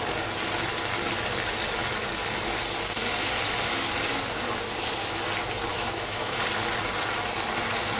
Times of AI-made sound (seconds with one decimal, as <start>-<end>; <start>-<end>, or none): 5.7-6.4